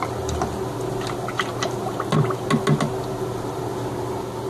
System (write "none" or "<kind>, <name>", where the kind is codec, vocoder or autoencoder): none